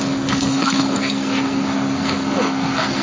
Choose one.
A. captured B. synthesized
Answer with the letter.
B